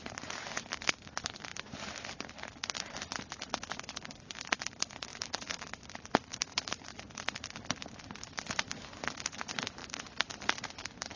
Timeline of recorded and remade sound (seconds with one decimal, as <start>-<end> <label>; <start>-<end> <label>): 0.0-5.1 recorded; 5.1-5.6 remade; 5.6-6.3 recorded; 6.3-6.8 remade; 6.8-9.8 recorded; 9.8-11.2 remade